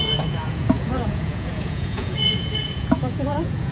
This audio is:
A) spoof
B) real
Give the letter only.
A